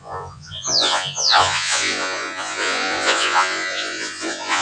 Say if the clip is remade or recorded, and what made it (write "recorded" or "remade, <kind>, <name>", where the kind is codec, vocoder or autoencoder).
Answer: remade, vocoder, Vocos